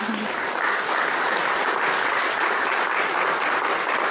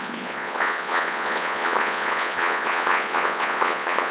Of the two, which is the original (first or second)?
first